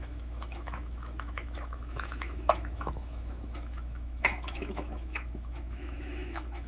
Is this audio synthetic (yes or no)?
yes